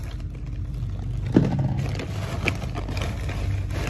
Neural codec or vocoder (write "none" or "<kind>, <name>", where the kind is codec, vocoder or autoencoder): none